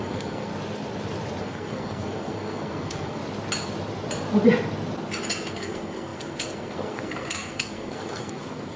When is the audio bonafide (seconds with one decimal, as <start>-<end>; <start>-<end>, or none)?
0.5-1.4; 3.2-5.5